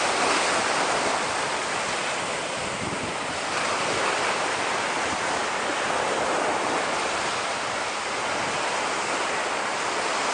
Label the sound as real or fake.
fake